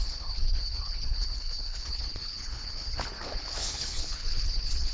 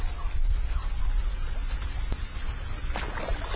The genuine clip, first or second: second